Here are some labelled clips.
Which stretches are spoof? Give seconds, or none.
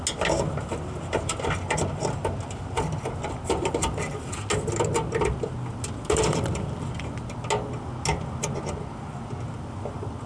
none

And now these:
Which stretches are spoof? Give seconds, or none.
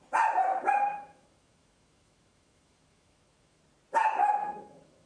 0.5-3.6 (autoencoder, DAC-VAE); 4.2-5.1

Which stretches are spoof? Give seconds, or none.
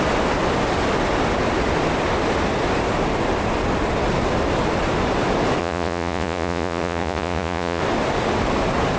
5.6-7.8 (vocoder, Vocos)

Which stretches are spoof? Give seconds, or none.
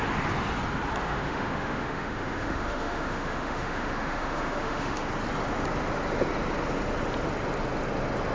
1.0-5.1 (autoencoder, DAC-VAE)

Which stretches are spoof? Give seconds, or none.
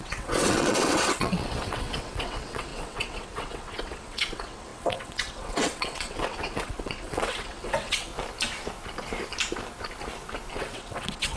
0.0-8.1 (vocoder, WaveNeXt); 10.5-11.4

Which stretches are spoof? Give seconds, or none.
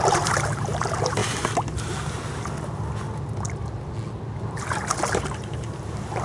0.0-1.2 (vocoder, BigVGAN v2); 3.2-3.6; 4.4-6.2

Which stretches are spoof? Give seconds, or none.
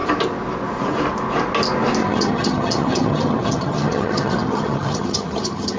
2.0-5.8 (vocoder, HiFi-GAN)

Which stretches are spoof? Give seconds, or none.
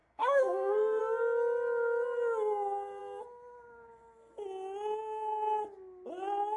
0.0-1.0 (codec, SNAC)